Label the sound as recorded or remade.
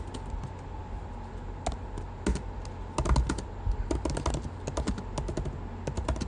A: recorded